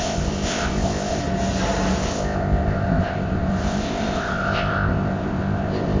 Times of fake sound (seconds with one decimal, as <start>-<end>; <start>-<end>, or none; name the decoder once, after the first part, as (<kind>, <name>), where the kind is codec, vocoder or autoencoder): 0.0-1.2 (codec, ZipCodec); 2.0-6.0